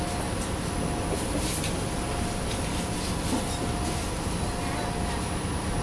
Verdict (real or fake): real